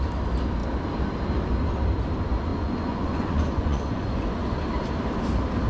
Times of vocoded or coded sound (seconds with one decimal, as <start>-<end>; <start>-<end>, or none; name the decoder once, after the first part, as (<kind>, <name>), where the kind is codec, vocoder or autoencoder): 2.5-4.6 (vocoder, Vocos)